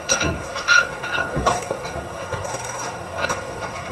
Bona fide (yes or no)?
no